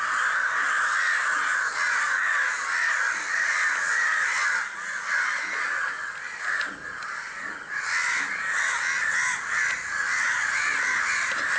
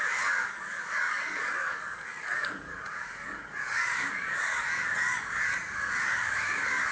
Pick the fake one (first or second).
second